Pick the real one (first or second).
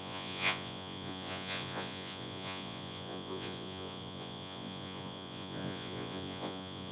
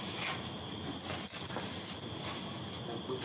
second